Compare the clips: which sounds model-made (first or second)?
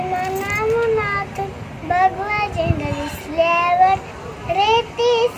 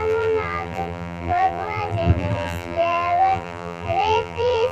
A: second